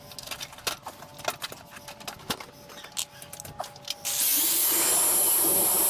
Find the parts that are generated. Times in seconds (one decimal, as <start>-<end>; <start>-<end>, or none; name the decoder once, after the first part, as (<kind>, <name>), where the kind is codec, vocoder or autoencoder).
none